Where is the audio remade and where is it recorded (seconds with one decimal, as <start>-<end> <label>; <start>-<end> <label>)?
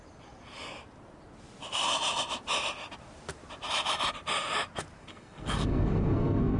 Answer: 0.0-5.0 recorded; 5.0-6.6 remade